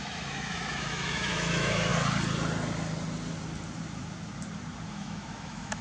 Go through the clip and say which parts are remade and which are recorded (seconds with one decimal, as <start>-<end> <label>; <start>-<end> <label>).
0.0-1.9 remade; 1.9-4.9 recorded; 4.9-5.8 remade